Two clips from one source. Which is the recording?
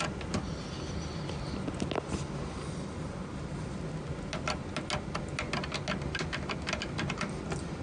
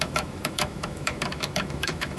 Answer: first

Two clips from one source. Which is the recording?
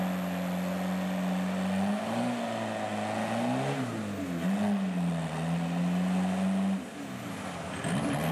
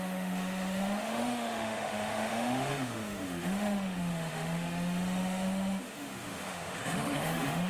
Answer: first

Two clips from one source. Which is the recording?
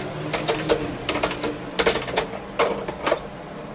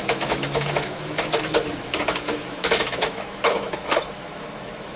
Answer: first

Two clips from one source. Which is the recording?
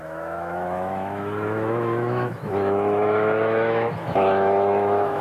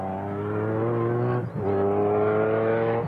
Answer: second